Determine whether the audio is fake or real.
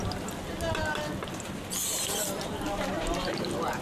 real